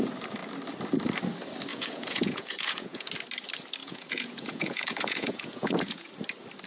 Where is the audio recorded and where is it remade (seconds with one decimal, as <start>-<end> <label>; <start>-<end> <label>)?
0.0-1.7 recorded; 1.7-3.1 remade; 3.1-3.8 recorded; 3.8-6.1 remade; 6.1-6.7 recorded